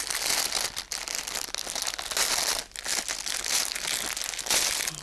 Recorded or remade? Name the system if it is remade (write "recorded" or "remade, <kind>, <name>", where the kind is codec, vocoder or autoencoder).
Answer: recorded